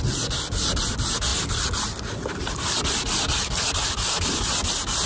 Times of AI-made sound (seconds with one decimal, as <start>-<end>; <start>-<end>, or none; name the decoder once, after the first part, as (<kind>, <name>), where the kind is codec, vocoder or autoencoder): none